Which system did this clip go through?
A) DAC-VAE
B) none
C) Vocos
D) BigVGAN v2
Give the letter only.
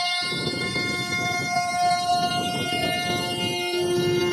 B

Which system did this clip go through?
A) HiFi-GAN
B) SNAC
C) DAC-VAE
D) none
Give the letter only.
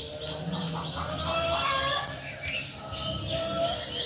D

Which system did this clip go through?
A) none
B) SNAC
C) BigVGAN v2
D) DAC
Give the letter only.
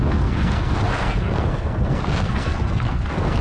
B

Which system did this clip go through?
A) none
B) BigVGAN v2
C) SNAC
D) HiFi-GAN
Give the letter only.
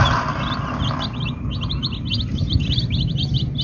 A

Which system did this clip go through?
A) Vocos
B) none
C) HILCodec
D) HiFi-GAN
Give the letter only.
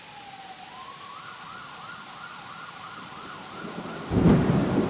B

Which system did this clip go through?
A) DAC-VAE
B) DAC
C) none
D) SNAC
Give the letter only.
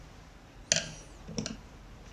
C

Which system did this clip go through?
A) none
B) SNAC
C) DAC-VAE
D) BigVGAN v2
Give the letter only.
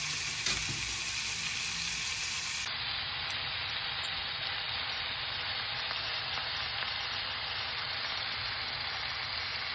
A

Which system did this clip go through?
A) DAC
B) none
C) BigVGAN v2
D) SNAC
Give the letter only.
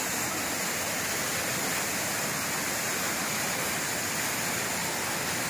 B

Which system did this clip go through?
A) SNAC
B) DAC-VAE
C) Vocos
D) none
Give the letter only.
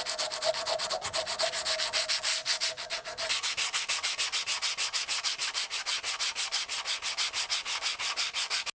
D